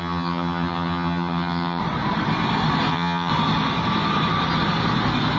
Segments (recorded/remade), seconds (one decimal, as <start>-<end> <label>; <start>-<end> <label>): 0.0-1.8 remade; 1.8-2.9 recorded; 2.9-3.3 remade; 3.3-5.4 recorded

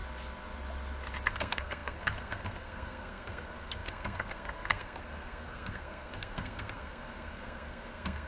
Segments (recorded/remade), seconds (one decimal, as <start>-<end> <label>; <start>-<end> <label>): 0.0-1.3 recorded; 1.3-8.3 remade

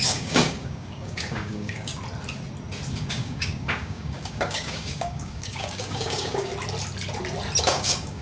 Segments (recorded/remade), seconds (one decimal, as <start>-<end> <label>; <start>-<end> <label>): 0.0-1.9 remade; 1.9-3.1 recorded; 3.1-6.5 remade; 6.5-7.6 recorded; 7.6-8.2 remade

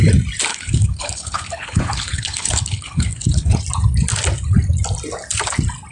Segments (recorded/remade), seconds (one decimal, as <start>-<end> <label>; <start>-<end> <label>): 0.0-0.5 recorded; 0.5-3.6 remade; 3.6-5.9 recorded

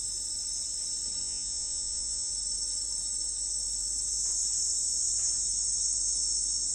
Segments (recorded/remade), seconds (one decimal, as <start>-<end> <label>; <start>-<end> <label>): 0.0-1.2 recorded; 1.2-2.3 remade; 2.3-6.7 recorded

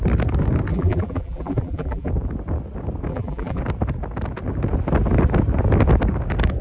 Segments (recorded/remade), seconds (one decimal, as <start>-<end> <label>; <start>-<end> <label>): 0.0-0.7 recorded; 0.7-2.1 remade; 2.1-3.1 recorded; 3.1-3.6 remade; 3.6-6.6 recorded

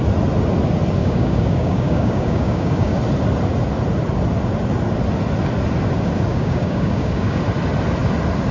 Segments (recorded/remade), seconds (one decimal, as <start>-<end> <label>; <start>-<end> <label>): 0.0-1.0 recorded; 1.0-3.0 remade; 3.0-6.3 recorded; 6.3-7.4 remade; 7.4-8.5 recorded